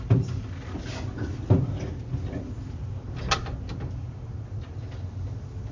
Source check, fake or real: real